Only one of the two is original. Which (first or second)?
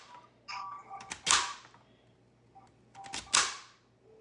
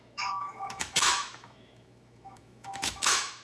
first